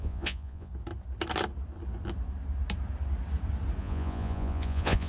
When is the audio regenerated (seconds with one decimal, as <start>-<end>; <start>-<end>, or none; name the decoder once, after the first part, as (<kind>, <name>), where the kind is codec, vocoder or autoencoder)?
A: 0.0-0.7 (vocoder, Vocos); 3.8-5.1